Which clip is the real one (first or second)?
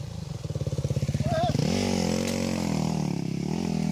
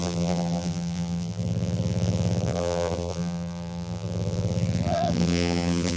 first